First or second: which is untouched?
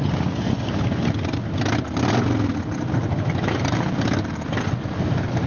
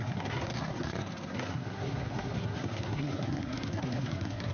first